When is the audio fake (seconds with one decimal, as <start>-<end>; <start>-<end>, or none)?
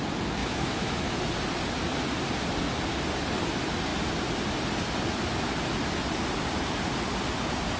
0.4-1.2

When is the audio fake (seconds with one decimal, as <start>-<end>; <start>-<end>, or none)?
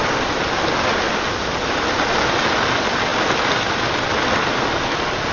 1.6-3.1; 4.5-5.3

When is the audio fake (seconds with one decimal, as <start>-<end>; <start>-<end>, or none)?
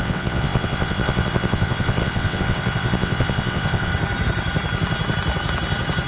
0.0-3.9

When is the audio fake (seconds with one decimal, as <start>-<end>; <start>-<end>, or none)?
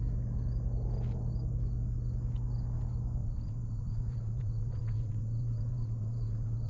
3.2-6.7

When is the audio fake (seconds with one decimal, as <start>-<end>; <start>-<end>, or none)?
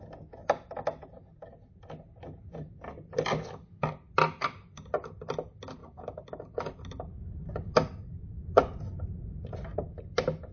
none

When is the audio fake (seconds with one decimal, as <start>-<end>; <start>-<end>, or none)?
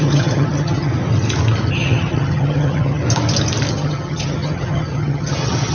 0.0-0.9; 1.7-3.0; 3.7-5.7